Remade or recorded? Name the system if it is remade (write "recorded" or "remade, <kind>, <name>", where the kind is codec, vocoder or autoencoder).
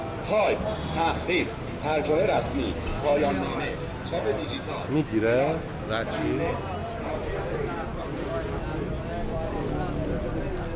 recorded